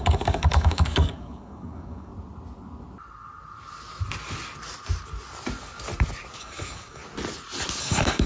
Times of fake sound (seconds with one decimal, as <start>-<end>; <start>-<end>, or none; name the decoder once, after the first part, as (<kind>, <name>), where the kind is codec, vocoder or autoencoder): 0.0-2.1 (codec, DAC); 6.4-7.0; 7.8-8.3